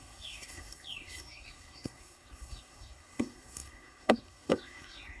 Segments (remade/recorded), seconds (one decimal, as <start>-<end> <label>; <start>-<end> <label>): 0.0-5.2 remade